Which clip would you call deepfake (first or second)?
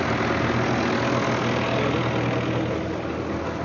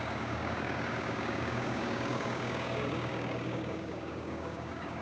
second